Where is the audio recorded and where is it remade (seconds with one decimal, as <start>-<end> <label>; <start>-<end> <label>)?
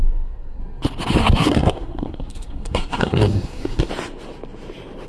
0.0-0.6 remade; 0.6-1.2 recorded; 1.2-3.9 remade; 3.9-5.1 recorded